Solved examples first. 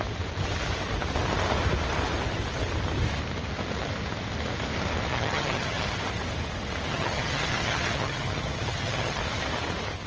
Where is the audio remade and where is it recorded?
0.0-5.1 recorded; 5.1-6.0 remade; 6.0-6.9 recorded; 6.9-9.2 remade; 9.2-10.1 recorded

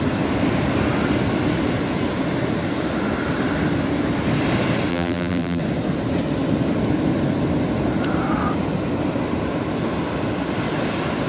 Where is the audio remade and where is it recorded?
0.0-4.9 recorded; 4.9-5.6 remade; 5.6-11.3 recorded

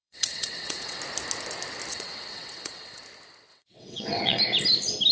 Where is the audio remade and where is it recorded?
0.0-1.0 remade; 1.0-1.9 recorded; 1.9-3.0 remade; 3.0-3.5 recorded; 3.5-4.4 remade; 4.4-5.1 recorded